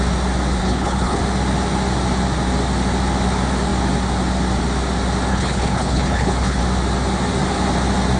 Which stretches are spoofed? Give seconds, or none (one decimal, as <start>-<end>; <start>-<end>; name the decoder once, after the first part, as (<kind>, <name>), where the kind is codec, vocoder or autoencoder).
0.6-1.2 (codec, HILCodec); 5.3-6.6